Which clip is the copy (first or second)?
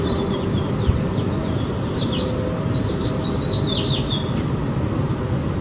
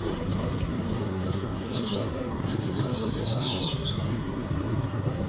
second